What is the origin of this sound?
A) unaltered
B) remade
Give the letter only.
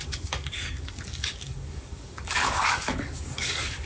B